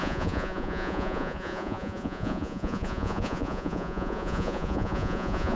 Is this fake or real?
fake